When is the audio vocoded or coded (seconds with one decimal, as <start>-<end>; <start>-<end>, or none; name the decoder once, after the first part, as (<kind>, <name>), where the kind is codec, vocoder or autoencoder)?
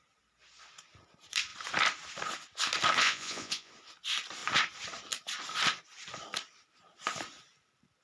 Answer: 3.0-3.7 (vocoder, Vocos)